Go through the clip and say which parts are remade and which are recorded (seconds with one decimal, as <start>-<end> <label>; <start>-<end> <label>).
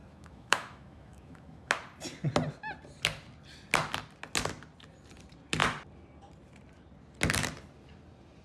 0.0-1.7 remade; 1.7-8.4 recorded